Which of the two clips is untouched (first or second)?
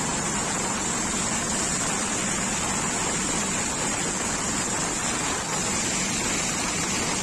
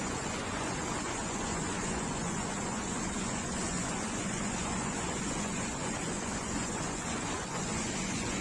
first